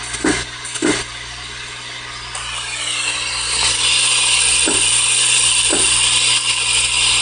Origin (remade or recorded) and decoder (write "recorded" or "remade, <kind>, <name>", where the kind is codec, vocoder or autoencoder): recorded